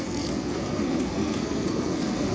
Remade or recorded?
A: remade